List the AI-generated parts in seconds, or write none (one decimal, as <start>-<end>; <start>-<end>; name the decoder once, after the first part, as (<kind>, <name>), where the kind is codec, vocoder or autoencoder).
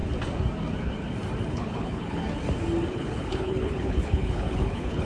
1.5-2.2 (codec, HILCodec); 2.9-5.1